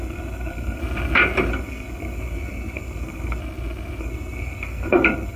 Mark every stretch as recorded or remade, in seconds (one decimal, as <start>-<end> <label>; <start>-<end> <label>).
0.0-0.8 remade; 0.8-1.5 recorded; 1.5-3.4 remade; 3.4-4.0 recorded; 4.0-5.4 remade